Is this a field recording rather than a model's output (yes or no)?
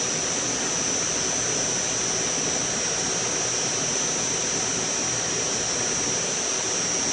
yes